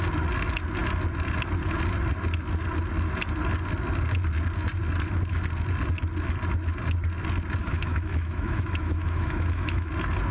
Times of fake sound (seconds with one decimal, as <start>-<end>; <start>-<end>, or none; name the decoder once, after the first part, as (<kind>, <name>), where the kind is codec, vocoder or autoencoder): 7.6-9.9 (autoencoder, DAC-VAE)

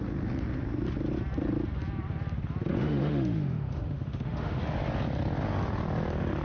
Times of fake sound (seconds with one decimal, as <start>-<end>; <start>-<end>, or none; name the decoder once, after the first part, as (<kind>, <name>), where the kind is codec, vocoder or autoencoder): 2.7-4.6 (autoencoder, DAC-VAE)

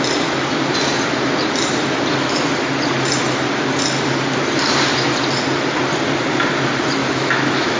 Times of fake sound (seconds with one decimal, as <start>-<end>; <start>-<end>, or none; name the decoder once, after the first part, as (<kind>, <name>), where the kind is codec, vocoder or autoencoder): 7.0-7.8 (autoencoder, DAC-VAE)